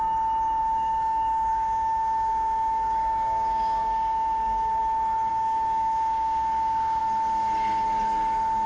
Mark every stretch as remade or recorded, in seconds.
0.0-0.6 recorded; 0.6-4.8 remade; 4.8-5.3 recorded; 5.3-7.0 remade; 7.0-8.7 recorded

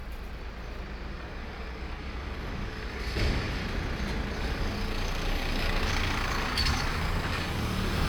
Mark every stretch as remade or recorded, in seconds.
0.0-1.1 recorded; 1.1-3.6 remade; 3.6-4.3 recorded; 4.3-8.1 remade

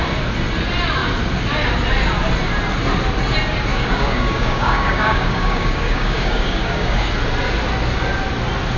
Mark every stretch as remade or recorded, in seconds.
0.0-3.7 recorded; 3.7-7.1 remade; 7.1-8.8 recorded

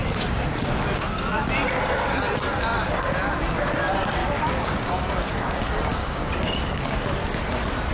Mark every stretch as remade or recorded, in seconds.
0.0-4.2 recorded; 4.2-5.6 remade; 5.6-6.0 recorded; 6.0-7.0 remade; 7.0-7.9 recorded

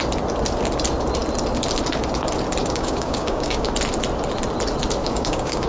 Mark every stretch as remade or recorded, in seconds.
0.0-2.6 recorded; 2.6-3.7 remade; 3.7-5.0 recorded; 5.0-5.7 remade